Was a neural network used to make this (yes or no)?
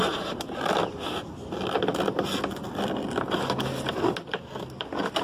no